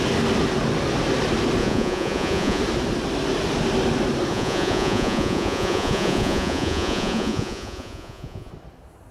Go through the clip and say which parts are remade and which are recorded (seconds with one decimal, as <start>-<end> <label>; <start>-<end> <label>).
0.0-1.6 recorded; 1.6-2.6 remade; 2.6-4.3 recorded; 4.3-8.5 remade; 8.5-9.1 recorded